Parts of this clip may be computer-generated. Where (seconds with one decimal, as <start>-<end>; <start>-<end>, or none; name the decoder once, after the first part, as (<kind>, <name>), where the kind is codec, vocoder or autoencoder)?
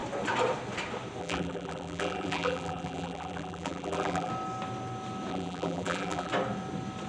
1.2-4.3 (vocoder, BigVGAN v2); 5.3-6.3